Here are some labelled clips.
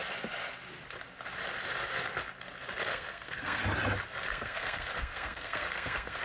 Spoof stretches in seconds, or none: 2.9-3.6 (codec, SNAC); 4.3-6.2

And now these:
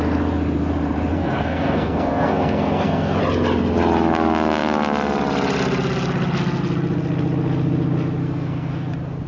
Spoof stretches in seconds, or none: 1.1-3.2 (codec, SNAC); 8.2-8.7

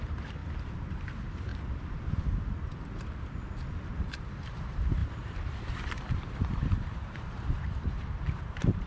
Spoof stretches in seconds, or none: 0.0-0.4 (vocoder, BigVGAN v2); 0.9-1.5; 4.3-8.9